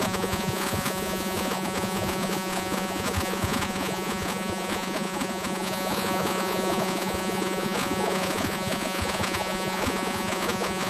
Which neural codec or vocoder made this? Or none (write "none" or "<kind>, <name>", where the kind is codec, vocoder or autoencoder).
vocoder, Vocos